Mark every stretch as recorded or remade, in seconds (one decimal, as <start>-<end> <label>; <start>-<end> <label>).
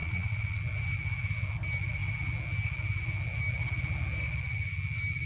0.0-0.6 remade; 0.6-5.3 recorded